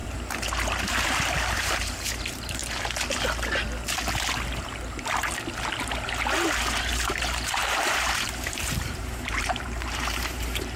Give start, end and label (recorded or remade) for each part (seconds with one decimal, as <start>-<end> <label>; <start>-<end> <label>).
0.0-0.9 recorded; 0.9-2.6 remade; 2.6-6.8 recorded; 6.8-10.8 remade